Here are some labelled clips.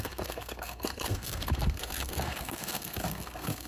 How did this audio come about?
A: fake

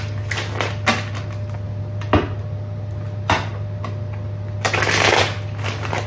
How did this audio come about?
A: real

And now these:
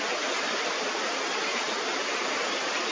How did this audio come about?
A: real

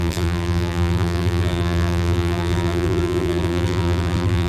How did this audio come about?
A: fake